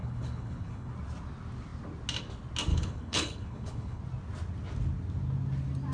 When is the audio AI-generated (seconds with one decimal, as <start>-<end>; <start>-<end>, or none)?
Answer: 0.0-0.9; 2.7-4.0